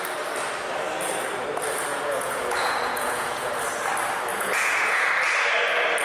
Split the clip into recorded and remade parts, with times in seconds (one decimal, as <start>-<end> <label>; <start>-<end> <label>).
0.0-1.9 recorded; 1.9-3.5 remade; 3.5-4.3 recorded; 4.3-5.1 remade; 5.1-6.0 recorded